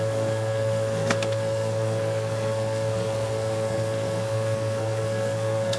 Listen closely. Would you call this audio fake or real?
fake